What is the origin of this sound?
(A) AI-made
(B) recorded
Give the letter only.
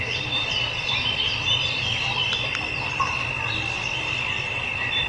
B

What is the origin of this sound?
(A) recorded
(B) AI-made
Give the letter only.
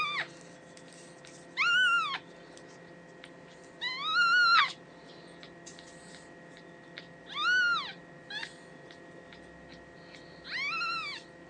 A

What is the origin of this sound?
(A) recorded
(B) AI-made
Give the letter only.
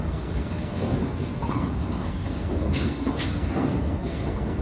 B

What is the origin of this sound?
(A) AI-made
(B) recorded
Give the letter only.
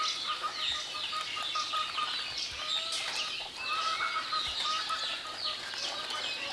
B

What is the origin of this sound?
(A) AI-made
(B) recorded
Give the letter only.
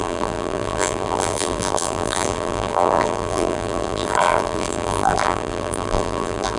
A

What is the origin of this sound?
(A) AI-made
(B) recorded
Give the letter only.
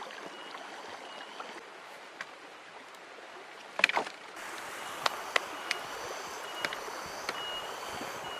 B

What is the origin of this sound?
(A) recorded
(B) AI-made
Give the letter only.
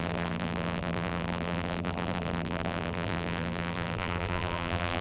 B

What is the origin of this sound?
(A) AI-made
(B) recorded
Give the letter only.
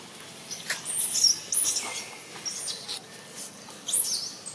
B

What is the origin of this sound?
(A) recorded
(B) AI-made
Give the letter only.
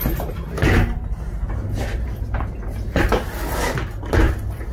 A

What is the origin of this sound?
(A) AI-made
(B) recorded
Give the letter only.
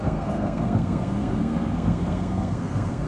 A